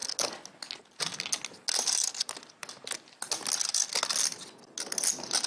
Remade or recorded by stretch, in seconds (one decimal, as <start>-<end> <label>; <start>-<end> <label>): 0.0-5.5 recorded